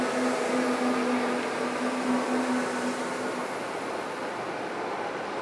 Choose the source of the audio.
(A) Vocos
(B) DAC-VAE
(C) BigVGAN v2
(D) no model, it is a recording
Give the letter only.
D